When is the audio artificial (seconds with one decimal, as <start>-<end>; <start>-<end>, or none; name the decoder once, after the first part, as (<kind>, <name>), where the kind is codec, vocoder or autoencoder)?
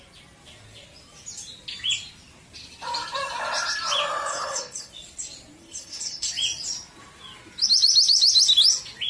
4.3-4.9 (codec, HILCodec); 5.6-6.3